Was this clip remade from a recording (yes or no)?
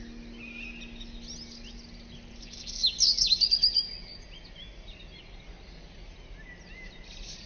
no